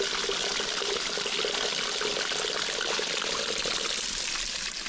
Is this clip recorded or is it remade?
recorded